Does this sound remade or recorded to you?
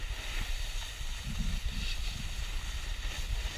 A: recorded